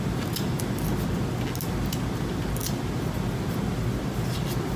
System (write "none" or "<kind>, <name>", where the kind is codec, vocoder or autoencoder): none